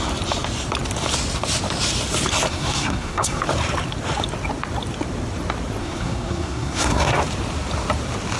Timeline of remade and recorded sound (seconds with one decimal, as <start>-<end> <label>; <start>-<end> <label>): 0.0-2.5 recorded; 2.5-3.4 remade; 3.4-5.8 recorded; 5.8-7.1 remade; 7.1-8.4 recorded